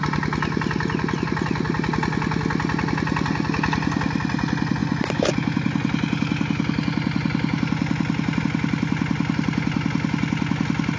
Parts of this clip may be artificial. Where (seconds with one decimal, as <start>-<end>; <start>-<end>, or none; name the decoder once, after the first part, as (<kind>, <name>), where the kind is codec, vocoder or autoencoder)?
none